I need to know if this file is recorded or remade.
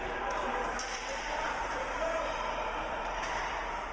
remade